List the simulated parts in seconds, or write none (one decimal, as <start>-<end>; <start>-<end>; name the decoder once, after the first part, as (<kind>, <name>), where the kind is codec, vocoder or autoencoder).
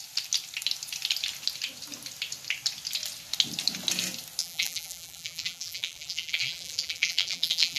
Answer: 4.4-7.8 (vocoder, BigVGAN v2)